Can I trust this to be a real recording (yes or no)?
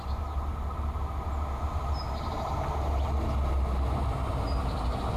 yes